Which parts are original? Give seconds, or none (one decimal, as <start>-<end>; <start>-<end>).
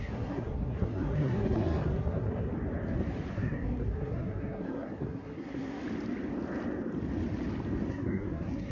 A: 2.5-3.3; 5.8-7.9